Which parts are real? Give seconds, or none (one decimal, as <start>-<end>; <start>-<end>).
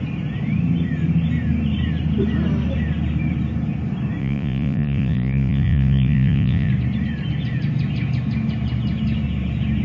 0.0-4.2; 6.7-9.8